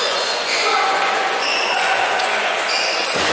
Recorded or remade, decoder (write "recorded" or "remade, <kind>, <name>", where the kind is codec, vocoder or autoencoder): remade, vocoder, Vocos